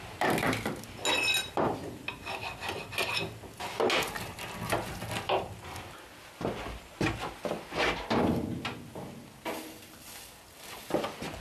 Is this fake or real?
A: real